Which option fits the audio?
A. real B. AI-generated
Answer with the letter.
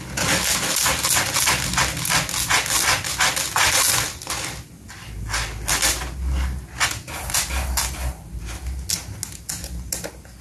A